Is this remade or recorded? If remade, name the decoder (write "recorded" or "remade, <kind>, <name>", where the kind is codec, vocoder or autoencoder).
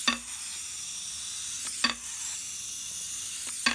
recorded